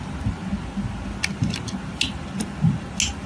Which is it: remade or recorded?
recorded